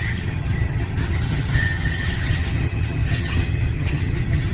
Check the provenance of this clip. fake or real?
fake